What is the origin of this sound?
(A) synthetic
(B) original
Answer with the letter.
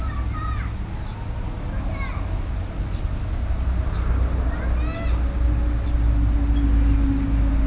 B